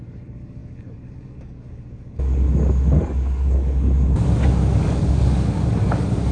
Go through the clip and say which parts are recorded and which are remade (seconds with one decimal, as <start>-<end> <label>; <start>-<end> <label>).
0.0-6.3 remade